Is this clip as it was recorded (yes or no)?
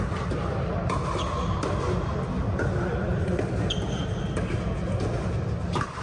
yes